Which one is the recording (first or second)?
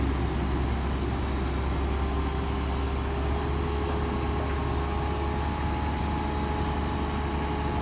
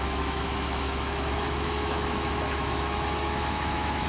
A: first